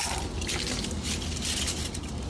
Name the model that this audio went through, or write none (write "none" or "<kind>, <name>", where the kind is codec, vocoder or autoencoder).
none